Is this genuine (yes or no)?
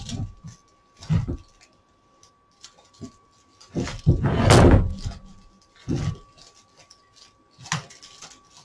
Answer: yes